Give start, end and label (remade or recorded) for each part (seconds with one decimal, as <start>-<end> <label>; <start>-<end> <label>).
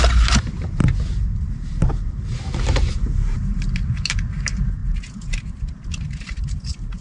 0.0-0.8 remade; 0.8-1.4 recorded; 1.4-7.0 remade